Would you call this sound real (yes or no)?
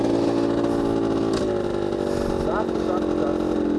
yes